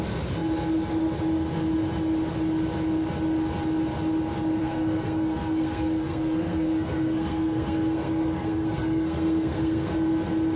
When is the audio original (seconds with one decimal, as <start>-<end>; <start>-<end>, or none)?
0.0-4.6; 9.9-10.6

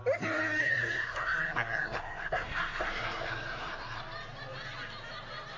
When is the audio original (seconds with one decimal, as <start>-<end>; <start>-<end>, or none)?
0.0-0.6; 4.0-5.6

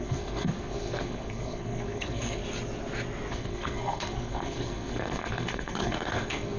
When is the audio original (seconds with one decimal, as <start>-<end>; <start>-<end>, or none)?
2.4-3.3

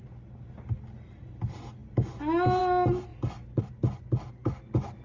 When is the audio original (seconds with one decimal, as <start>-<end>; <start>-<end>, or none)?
0.0-5.0

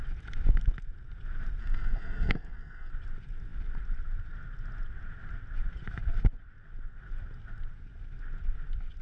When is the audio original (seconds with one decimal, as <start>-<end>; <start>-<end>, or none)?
0.0-1.6; 2.9-9.0

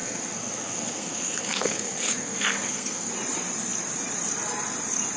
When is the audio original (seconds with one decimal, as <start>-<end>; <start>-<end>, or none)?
3.1-5.2

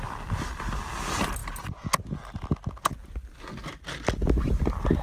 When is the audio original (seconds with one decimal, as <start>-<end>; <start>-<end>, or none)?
0.0-5.0

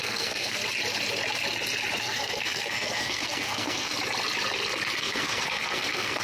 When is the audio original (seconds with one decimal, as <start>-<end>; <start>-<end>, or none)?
0.6-2.0; 3.9-5.0